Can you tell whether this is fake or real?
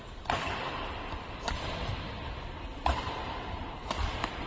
real